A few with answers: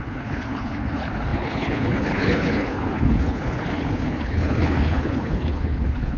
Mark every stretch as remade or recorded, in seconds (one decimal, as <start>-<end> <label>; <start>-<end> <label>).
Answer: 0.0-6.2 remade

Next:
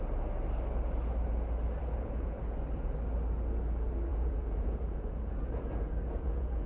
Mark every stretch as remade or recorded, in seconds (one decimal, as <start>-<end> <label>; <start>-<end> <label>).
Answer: 0.0-1.8 recorded; 1.8-2.4 remade; 2.4-4.1 recorded; 4.1-6.7 remade

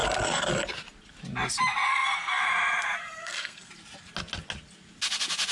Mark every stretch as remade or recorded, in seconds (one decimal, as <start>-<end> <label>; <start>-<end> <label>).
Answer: 0.0-1.9 recorded; 1.9-2.4 remade; 2.4-3.0 recorded; 3.0-3.7 remade; 3.7-5.5 recorded

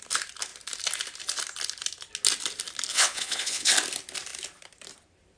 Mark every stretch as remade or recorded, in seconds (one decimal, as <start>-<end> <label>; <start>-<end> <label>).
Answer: 0.0-2.9 recorded; 2.9-3.7 remade; 3.7-5.4 recorded

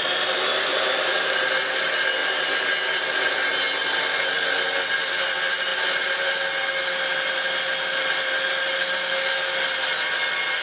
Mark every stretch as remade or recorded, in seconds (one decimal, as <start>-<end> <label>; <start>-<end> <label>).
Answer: 0.0-10.6 recorded

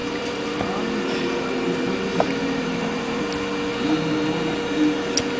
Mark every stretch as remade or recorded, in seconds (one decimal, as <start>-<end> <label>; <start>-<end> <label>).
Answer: 0.0-3.2 remade; 3.2-5.4 recorded

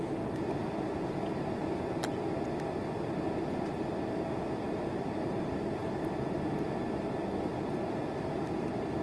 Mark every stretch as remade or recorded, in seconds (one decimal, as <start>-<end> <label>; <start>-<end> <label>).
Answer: 0.0-9.0 recorded